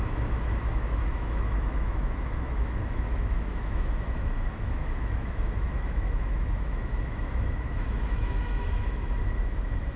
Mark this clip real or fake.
fake